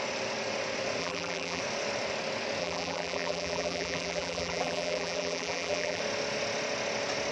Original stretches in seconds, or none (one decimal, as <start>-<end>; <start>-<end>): 0.0-1.0; 1.6-2.6; 6.0-7.3